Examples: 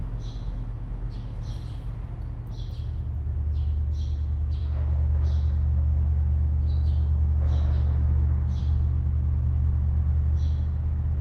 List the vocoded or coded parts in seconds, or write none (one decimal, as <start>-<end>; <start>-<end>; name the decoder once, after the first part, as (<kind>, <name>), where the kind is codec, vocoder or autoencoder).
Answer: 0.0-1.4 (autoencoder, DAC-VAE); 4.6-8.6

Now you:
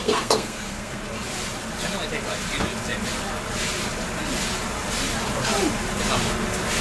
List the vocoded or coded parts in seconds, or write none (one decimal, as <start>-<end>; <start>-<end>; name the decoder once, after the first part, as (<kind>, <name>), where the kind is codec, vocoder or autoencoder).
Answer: 0.0-1.0 (codec, SNAC)

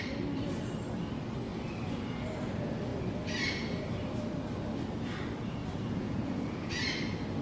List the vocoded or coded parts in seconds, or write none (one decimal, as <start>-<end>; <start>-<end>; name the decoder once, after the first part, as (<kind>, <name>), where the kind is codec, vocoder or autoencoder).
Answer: 5.6-6.7 (vocoder, Vocos)

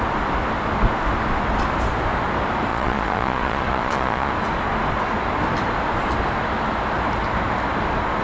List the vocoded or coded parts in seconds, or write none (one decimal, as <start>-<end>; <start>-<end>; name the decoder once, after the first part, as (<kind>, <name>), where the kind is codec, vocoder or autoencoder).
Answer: 2.7-4.3 (vocoder, Vocos)

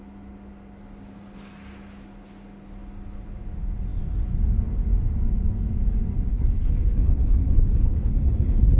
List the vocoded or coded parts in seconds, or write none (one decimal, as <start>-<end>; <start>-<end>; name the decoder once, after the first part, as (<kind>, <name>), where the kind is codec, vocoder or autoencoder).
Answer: 6.3-8.8 (codec, HILCodec)

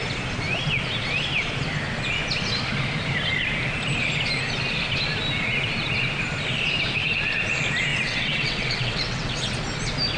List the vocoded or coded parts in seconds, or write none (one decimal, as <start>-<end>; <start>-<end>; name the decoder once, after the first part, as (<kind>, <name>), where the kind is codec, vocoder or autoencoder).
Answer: 7.9-9.5 (vocoder, WaveNeXt)

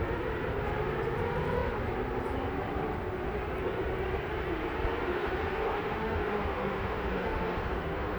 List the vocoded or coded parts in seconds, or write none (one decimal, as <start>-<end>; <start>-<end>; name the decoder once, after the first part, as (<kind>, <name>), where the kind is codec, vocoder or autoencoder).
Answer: 5.1-8.2 (autoencoder, DAC-VAE)

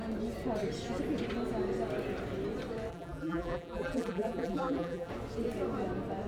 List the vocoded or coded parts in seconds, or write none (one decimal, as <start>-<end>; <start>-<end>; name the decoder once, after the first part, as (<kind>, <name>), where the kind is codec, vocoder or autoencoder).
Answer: 2.9-5.1 (vocoder, BigVGAN v2)